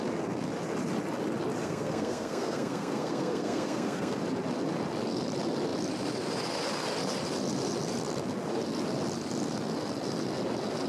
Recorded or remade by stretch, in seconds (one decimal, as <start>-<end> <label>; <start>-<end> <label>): 0.0-1.6 recorded; 1.6-4.2 remade; 4.2-10.9 recorded